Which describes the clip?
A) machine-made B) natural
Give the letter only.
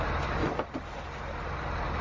B